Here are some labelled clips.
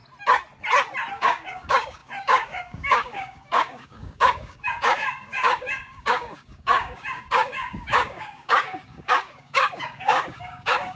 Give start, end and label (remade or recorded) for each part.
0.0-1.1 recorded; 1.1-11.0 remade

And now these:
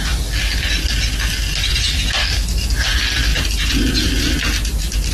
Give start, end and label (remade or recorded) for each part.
0.0-0.5 recorded; 0.5-1.8 remade; 1.8-5.1 recorded